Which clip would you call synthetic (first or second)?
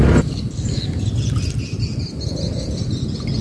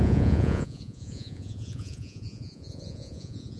second